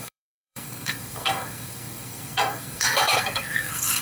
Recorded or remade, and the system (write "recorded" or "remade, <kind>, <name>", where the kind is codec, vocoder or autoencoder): remade, codec, SNAC